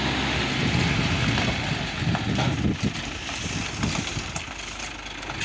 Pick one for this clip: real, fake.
real